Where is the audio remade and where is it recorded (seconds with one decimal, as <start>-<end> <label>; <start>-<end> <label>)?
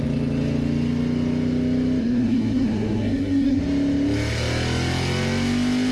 0.0-2.0 recorded; 2.0-3.6 remade; 3.6-5.9 recorded